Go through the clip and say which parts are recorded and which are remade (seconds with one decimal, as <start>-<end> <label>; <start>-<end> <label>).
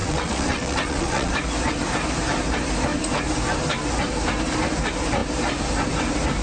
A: 0.0-1.3 remade; 1.3-6.4 recorded